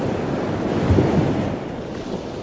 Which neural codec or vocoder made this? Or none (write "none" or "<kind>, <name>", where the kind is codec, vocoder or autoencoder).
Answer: none